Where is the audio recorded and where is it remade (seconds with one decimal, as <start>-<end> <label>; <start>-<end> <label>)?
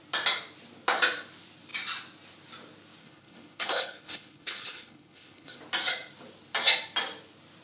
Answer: 0.0-3.0 recorded; 3.0-5.6 remade; 5.6-7.6 recorded